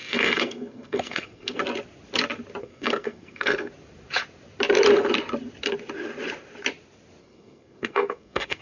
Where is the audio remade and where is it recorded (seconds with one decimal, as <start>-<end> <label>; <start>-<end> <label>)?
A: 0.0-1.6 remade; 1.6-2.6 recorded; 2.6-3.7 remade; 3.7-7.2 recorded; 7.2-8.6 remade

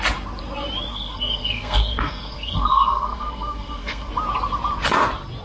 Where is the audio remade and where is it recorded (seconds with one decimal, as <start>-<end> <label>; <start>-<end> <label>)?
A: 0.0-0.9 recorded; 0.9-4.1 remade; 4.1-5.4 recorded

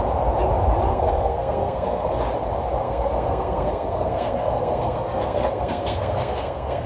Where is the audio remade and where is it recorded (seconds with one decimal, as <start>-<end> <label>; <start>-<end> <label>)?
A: 0.0-0.9 recorded; 0.9-2.1 remade; 2.1-2.8 recorded; 2.8-6.9 remade

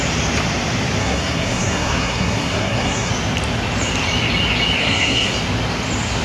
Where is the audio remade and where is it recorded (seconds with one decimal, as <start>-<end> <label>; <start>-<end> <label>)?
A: 0.0-1.0 recorded; 1.0-3.1 remade; 3.1-4.8 recorded; 4.8-5.3 remade; 5.3-6.2 recorded

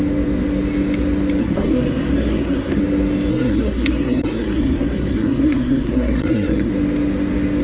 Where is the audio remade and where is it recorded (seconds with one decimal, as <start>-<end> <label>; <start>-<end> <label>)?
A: 0.0-1.4 recorded; 1.4-2.8 remade; 2.8-3.3 recorded; 3.3-6.7 remade; 6.7-7.6 recorded

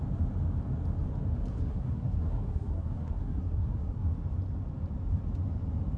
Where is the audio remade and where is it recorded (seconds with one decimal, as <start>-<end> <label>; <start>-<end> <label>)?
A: 0.0-1.5 recorded; 1.5-4.1 remade; 4.1-6.0 recorded

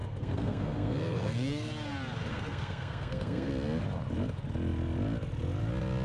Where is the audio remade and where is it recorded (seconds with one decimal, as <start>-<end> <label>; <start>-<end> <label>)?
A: 0.0-1.7 remade; 1.7-2.3 recorded; 2.3-3.5 remade; 3.5-6.0 recorded

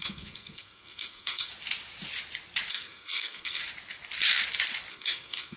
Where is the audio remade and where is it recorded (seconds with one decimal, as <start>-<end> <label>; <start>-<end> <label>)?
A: 0.0-1.5 remade; 1.5-2.7 recorded; 2.7-3.6 remade; 3.6-4.9 recorded; 4.9-5.6 remade